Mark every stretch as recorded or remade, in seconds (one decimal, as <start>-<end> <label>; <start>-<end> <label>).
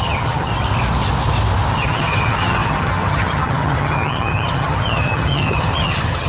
0.0-0.5 remade; 0.5-1.7 recorded; 1.7-6.3 remade